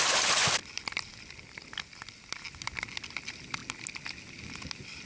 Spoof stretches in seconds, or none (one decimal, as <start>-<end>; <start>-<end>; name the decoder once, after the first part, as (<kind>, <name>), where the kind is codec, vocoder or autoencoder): none

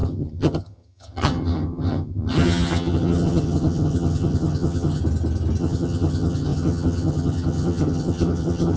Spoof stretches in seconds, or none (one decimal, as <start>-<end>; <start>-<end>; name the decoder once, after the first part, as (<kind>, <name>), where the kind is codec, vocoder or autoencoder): 0.0-5.0 (vocoder, HiFi-GAN); 5.6-8.8